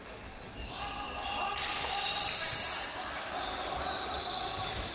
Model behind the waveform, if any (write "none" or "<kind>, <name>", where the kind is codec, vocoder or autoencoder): none